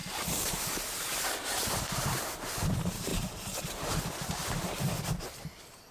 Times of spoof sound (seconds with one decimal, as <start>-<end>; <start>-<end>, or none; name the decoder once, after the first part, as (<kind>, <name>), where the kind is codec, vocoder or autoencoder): 0.0-0.6 (vocoder, BigVGAN v2)